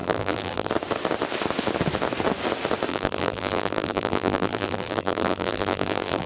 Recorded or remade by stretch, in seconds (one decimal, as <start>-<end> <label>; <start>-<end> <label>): 0.0-0.7 remade; 0.7-2.9 recorded; 2.9-6.3 remade